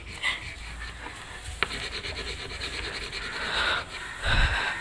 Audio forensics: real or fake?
real